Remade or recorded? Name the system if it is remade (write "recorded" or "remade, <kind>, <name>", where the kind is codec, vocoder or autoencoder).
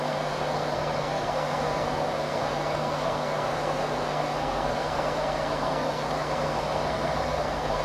remade, codec, SNAC